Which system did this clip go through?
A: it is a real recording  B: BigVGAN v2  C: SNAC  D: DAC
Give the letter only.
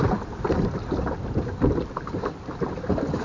A